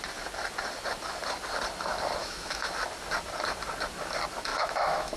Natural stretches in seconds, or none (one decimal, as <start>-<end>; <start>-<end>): 0.0-2.2; 2.7-4.5